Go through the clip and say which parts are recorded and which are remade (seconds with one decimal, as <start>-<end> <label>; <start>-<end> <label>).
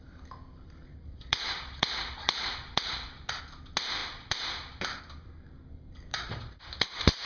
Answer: 0.0-1.1 recorded; 1.1-3.4 remade; 3.4-6.1 recorded; 6.1-6.6 remade; 6.6-7.3 recorded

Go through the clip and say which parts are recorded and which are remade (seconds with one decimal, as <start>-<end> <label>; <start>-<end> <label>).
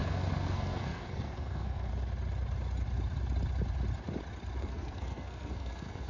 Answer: 0.0-1.9 remade; 1.9-4.6 recorded; 4.6-6.1 remade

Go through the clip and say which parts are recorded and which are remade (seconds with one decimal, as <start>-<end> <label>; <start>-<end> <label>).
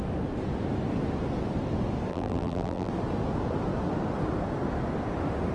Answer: 0.0-2.1 recorded; 2.1-2.9 remade; 2.9-5.5 recorded